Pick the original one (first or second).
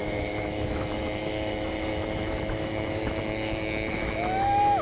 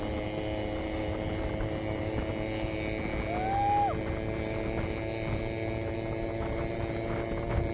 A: second